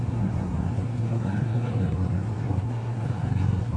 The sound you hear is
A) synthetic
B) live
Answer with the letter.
A